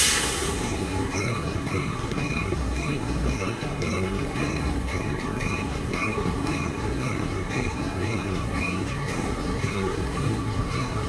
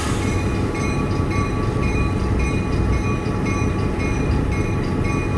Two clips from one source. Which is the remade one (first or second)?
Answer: first